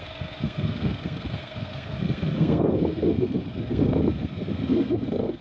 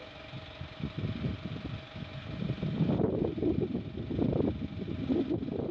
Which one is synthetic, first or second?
first